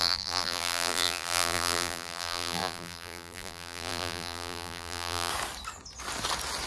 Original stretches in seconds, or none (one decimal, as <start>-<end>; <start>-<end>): 5.3-6.7

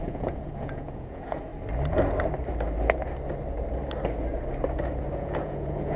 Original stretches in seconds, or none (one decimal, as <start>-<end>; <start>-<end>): 1.5-5.1

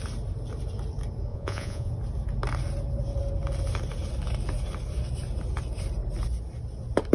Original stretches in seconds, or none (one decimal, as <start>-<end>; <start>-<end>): 0.0-1.3; 1.9-7.1